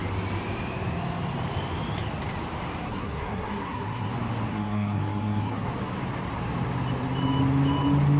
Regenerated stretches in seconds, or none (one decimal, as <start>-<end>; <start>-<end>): 2.8-4.1; 4.5-5.7